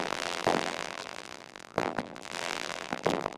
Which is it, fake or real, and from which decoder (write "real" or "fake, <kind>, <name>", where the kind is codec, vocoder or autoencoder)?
fake, vocoder, BigVGAN v2